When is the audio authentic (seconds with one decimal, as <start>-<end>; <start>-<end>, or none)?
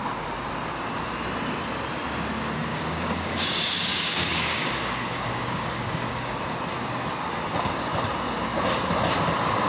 0.0-2.7; 6.4-9.7